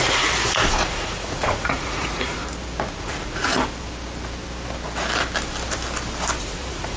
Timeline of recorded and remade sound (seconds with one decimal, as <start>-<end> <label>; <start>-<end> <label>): 0.0-2.4 remade; 2.4-2.9 recorded; 2.9-3.5 remade; 3.5-6.4 recorded; 6.4-7.0 remade